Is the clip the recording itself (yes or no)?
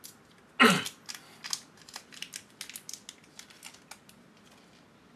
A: yes